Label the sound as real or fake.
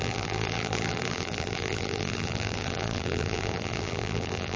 fake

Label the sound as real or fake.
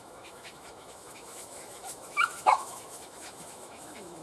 fake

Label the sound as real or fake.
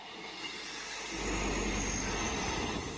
real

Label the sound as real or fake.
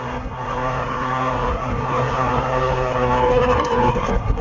fake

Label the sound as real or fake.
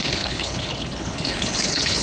fake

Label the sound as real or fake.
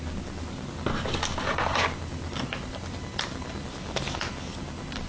real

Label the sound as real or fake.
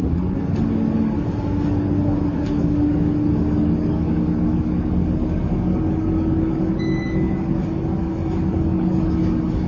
fake